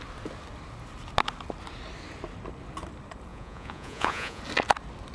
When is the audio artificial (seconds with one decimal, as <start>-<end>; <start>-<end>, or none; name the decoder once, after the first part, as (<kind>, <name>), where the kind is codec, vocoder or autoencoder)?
3.3-4.4 (vocoder, Vocos)